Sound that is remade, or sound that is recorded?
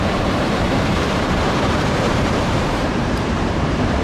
remade